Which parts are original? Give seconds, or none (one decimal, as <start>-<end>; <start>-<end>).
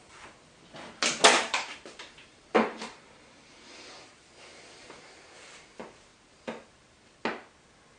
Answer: 0.0-1.3; 3.9-8.0